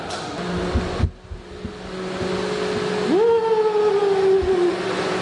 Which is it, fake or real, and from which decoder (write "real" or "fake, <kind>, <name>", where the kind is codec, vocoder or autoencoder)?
real